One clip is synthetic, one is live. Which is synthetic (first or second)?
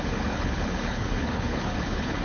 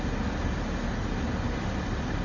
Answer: first